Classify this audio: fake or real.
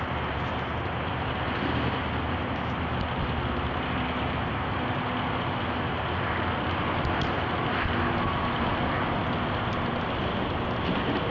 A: real